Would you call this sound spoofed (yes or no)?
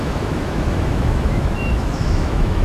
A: yes